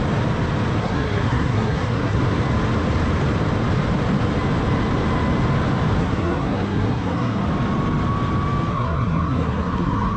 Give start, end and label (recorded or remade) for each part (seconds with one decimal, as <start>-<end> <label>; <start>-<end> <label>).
0.0-0.8 recorded; 0.8-2.2 remade; 2.2-6.0 recorded; 6.0-7.4 remade; 7.4-8.7 recorded; 8.7-10.2 remade